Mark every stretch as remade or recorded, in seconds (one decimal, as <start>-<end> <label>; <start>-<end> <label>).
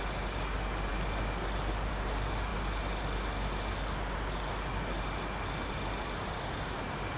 0.0-7.2 recorded